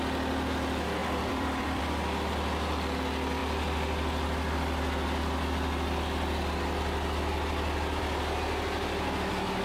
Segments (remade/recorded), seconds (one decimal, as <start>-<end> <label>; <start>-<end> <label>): 0.0-1.0 recorded; 1.0-1.8 remade; 1.8-9.6 recorded